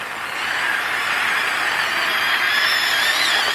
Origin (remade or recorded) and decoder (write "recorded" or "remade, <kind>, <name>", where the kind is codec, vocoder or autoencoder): recorded